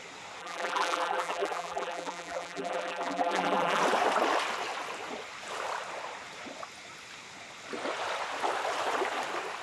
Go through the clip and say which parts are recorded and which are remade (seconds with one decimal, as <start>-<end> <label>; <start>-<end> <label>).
0.0-0.4 recorded; 0.4-3.8 remade; 3.8-9.6 recorded